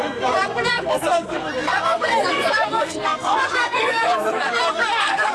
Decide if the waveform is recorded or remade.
remade